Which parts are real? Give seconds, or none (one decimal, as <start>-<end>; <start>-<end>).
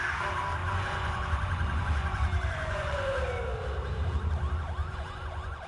0.0-0.6; 3.2-4.8